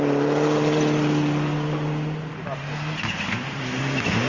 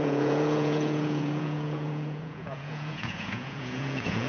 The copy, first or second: second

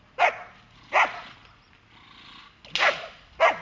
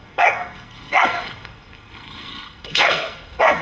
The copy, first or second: second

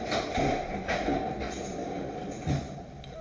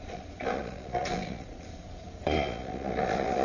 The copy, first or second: second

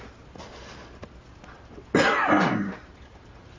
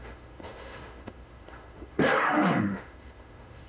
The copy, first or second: second